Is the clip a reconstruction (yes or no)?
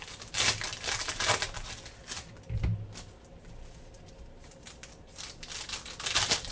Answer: no